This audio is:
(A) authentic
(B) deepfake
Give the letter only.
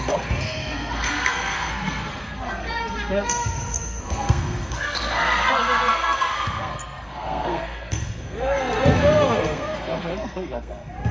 B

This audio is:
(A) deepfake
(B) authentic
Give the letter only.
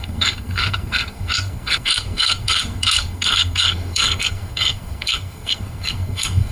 A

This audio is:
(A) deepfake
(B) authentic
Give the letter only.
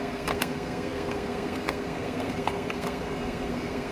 A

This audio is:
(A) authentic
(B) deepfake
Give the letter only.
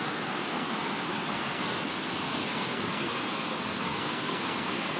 B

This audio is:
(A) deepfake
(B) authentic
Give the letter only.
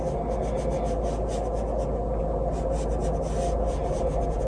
B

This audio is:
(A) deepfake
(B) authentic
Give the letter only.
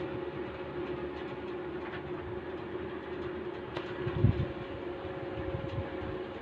B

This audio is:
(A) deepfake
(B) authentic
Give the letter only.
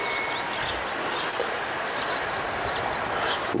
B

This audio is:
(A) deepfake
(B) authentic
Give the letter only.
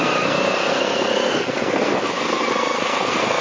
A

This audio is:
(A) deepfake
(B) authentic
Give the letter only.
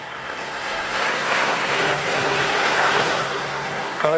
A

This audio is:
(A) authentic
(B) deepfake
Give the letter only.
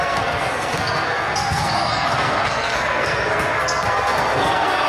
B